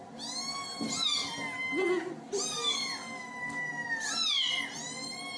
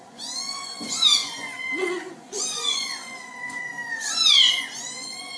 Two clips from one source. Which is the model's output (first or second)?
second